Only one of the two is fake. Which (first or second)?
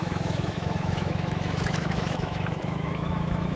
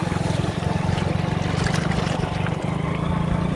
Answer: first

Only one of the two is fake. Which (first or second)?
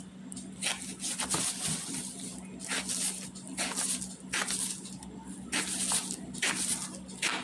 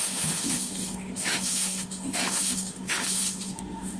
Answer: second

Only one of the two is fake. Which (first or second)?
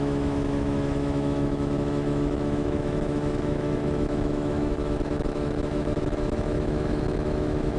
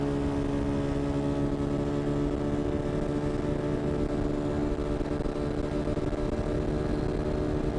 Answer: first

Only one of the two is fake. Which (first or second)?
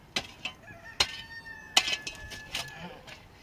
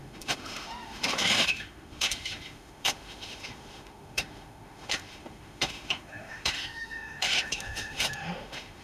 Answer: second